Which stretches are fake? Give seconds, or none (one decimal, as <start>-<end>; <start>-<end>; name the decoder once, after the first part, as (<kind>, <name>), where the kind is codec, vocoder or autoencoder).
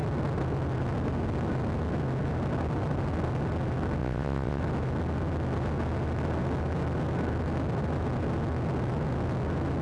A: 4.0-4.6 (vocoder, WaveNeXt)